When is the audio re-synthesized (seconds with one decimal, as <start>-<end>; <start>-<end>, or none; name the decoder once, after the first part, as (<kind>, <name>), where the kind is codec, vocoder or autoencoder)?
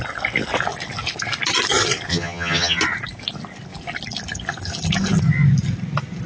2.1-2.8 (vocoder, HiFi-GAN)